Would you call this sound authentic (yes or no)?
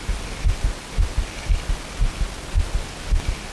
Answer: yes